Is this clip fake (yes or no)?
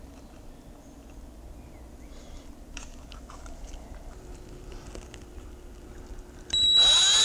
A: yes